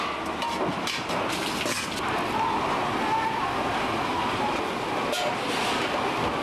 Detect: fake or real real